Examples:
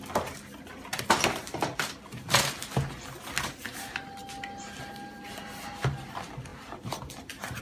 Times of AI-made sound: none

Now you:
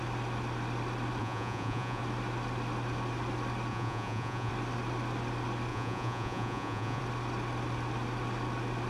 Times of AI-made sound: 1.2-2.0 (vocoder, Vocos); 3.7-4.5; 5.7-7.0

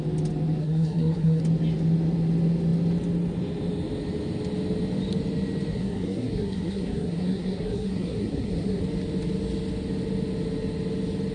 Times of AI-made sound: 0.6-1.4 (codec, SNAC); 5.7-8.8